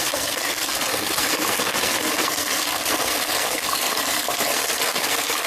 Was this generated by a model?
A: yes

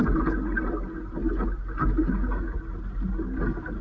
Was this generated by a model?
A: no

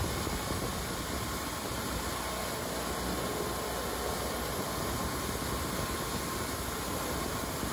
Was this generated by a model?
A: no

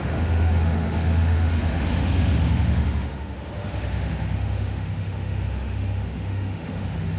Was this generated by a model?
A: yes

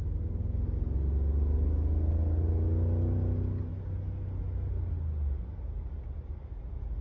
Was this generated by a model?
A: no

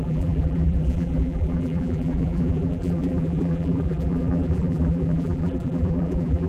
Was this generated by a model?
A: yes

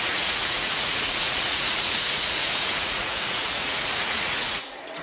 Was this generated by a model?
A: yes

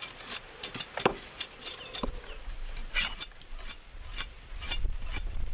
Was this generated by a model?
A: no